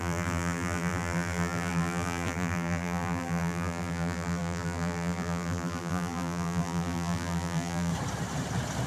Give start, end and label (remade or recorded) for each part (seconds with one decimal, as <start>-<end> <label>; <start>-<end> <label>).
0.0-7.9 remade; 7.9-8.9 recorded

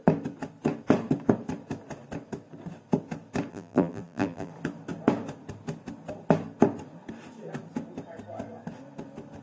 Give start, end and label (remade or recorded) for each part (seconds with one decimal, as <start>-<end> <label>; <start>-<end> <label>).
0.0-3.5 recorded; 3.5-4.5 remade; 4.5-9.4 recorded

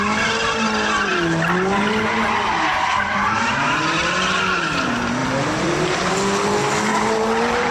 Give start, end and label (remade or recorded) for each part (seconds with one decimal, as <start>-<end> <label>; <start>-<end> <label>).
0.0-5.2 recorded; 5.2-6.1 remade; 6.1-6.9 recorded; 6.9-7.7 remade